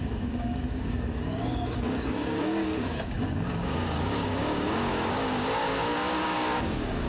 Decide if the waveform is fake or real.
fake